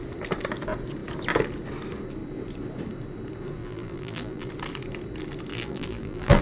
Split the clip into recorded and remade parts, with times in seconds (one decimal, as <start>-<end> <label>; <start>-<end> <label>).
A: 0.0-3.6 recorded; 3.6-4.5 remade; 4.5-5.5 recorded; 5.5-6.4 remade